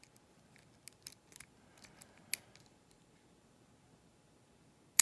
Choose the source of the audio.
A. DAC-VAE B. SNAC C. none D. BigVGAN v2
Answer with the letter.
C